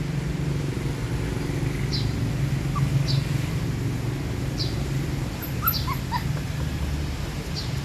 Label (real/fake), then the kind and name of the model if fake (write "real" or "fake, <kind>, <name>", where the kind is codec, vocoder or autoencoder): real